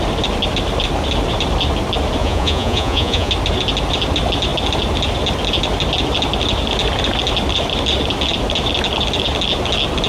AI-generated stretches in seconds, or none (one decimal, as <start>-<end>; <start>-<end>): 2.2-3.3

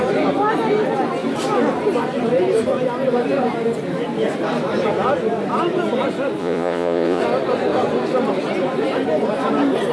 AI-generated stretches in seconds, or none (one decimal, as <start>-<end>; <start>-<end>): 6.4-7.2